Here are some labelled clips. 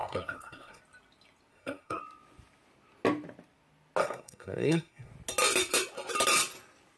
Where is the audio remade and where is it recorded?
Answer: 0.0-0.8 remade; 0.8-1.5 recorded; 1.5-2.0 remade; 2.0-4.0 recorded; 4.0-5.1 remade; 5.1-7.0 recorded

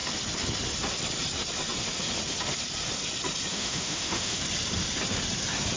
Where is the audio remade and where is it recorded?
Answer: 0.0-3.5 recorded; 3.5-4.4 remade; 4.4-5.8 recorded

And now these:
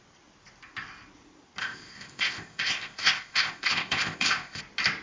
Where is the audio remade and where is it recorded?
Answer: 0.0-1.6 recorded; 1.6-4.6 remade; 4.6-5.0 recorded

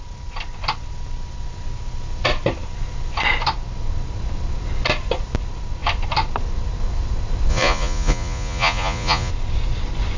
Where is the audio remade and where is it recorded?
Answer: 0.0-7.5 recorded; 7.5-9.3 remade; 9.3-10.2 recorded

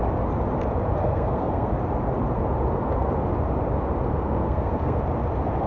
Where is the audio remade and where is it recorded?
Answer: 0.0-1.0 recorded; 1.0-1.7 remade; 1.7-4.1 recorded; 4.1-5.0 remade; 5.0-5.7 recorded